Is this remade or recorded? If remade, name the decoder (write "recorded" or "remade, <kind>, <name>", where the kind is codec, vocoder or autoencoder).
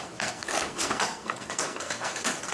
remade, codec, SNAC